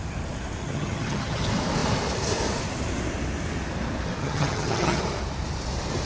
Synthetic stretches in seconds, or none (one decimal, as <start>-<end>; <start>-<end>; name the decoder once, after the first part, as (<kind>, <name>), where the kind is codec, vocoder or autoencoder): 0.6-1.4 (vocoder, HiFi-GAN); 4.2-5.0